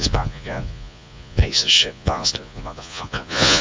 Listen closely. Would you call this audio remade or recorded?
remade